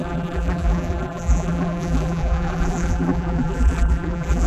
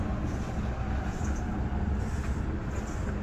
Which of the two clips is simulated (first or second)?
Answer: first